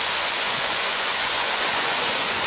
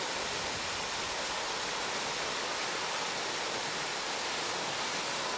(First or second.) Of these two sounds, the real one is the second